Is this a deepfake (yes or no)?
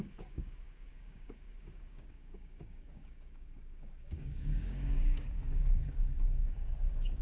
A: yes